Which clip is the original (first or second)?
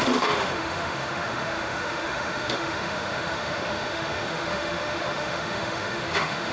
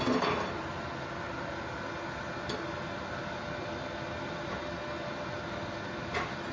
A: second